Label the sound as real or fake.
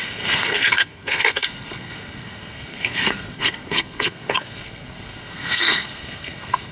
fake